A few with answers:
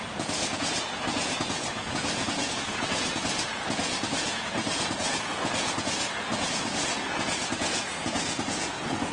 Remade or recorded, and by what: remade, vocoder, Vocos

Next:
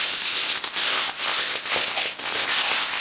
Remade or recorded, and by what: remade, codec, ZipCodec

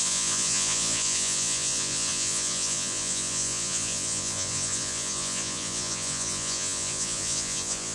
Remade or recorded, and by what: remade, vocoder, Vocos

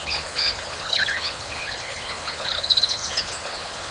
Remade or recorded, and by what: remade, codec, HILCodec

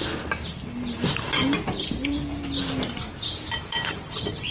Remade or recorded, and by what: recorded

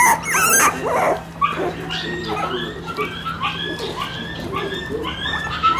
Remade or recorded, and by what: recorded